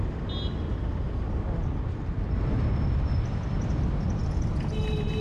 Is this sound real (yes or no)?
yes